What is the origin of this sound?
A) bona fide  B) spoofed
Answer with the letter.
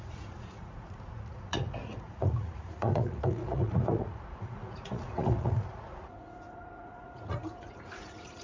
B